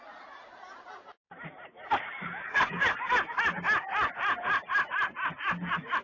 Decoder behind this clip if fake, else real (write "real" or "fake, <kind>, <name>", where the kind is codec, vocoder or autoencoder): real